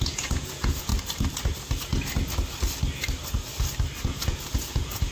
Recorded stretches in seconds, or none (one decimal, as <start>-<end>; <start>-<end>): 0.9-4.0